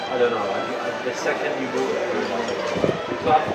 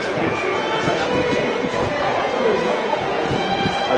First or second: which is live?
first